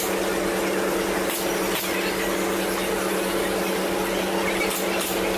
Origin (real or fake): real